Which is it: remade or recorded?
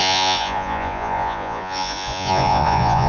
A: remade